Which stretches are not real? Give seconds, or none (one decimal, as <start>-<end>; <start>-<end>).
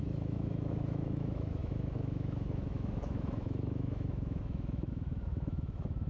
0.0-6.1